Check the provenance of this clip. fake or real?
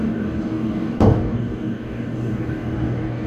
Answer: fake